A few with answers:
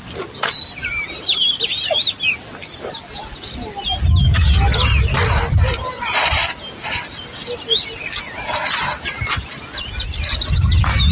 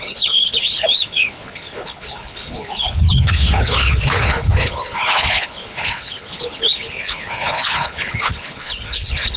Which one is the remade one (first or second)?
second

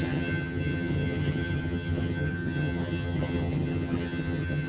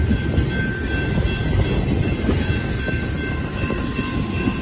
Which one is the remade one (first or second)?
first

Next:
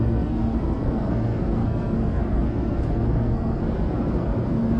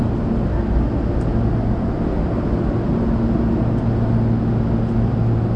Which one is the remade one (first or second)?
first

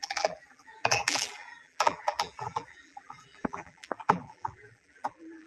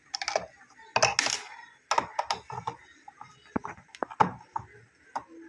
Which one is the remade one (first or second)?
first